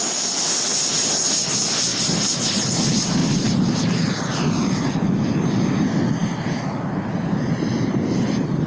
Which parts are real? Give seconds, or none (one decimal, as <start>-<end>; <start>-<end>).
0.0-1.9; 2.8-3.2; 4.9-8.7